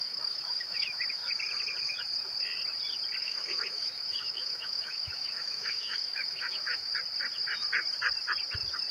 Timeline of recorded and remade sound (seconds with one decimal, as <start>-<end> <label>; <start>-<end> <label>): 0.0-1.2 remade; 1.2-3.2 recorded; 3.2-6.9 remade; 6.9-8.9 recorded